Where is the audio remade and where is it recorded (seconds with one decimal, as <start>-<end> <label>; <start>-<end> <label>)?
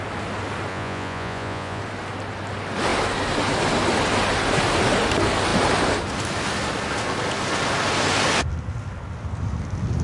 0.0-0.7 recorded; 0.7-1.8 remade; 1.8-10.0 recorded